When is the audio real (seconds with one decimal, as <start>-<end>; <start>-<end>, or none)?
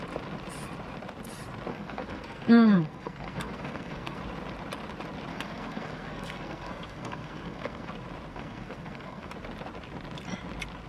0.0-1.7; 4.2-5.3; 7.9-8.3; 9.3-10.9